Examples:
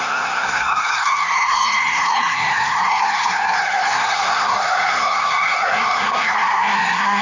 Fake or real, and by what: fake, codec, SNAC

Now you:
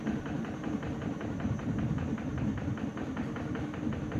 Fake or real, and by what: real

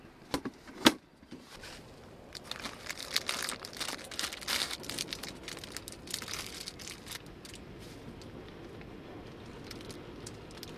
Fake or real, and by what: real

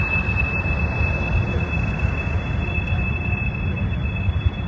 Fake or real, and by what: real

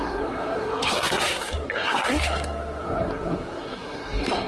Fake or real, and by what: fake, codec, SNAC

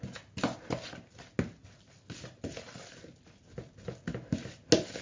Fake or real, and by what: real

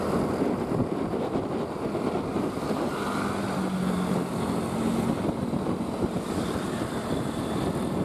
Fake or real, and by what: real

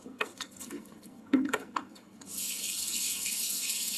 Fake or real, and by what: fake, codec, SNAC